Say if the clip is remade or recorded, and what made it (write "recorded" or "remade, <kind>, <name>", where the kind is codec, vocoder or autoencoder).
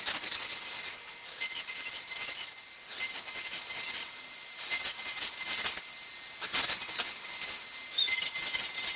recorded